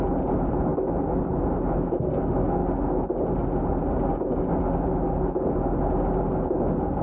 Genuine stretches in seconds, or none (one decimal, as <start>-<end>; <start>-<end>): 0.0-7.0